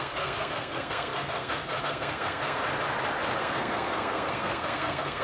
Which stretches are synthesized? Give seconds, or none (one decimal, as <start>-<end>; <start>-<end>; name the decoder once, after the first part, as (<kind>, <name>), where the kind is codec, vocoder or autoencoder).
0.0-2.6 (codec, SNAC); 3.4-5.2